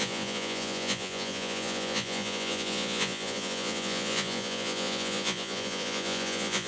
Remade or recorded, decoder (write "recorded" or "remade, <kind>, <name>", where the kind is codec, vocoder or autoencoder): remade, vocoder, Vocos